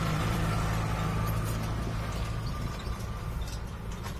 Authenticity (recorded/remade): remade